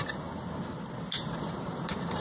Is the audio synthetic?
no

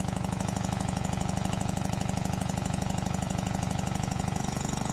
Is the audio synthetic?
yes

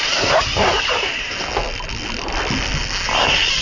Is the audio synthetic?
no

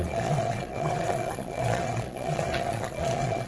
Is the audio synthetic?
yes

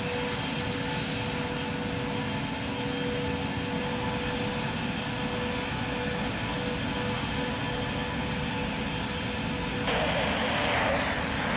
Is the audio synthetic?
no